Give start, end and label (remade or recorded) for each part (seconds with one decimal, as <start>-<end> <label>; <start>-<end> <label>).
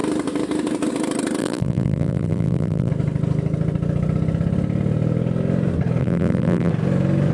0.0-1.4 recorded; 1.4-2.9 remade; 2.9-6.0 recorded; 6.0-6.7 remade; 6.7-7.3 recorded